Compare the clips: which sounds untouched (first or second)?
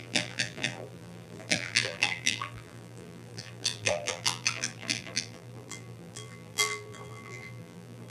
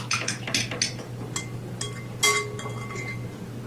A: second